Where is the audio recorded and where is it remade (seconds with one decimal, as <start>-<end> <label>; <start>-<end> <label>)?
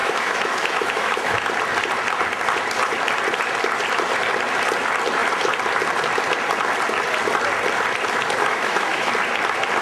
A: 0.0-1.5 remade; 1.5-8.4 recorded; 8.4-9.1 remade; 9.1-9.8 recorded